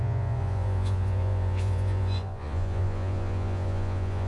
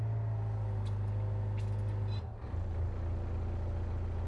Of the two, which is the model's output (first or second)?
first